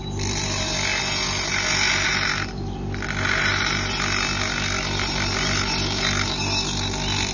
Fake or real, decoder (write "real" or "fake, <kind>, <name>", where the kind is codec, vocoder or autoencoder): real